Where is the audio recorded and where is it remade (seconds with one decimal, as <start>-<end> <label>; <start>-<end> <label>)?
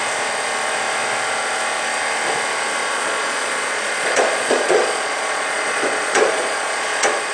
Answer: 0.0-2.8 recorded; 2.8-7.3 remade